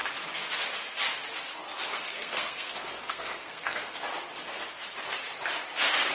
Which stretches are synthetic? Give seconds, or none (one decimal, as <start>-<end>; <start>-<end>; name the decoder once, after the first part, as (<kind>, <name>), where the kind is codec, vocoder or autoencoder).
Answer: 1.9-4.0 (codec, SNAC)